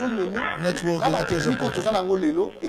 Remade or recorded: remade